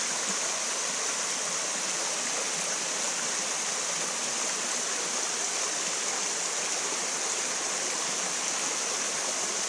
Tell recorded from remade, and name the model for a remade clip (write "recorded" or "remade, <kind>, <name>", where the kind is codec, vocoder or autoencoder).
recorded